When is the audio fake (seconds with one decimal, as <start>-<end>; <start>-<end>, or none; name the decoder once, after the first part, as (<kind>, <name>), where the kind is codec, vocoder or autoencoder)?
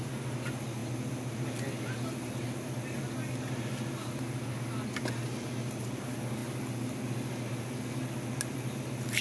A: none